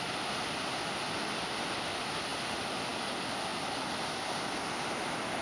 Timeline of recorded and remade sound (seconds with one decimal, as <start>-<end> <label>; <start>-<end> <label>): 0.0-5.4 recorded